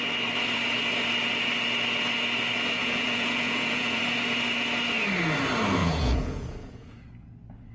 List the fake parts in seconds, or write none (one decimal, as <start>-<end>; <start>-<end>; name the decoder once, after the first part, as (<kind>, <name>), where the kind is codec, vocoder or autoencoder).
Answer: 2.8-4.0 (vocoder, Vocos); 5.8-7.1